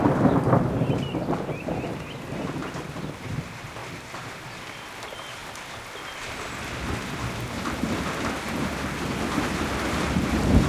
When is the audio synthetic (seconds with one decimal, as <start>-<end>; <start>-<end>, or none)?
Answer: 0.0-2.6; 3.2-3.8; 5.0-5.4; 9.5-10.7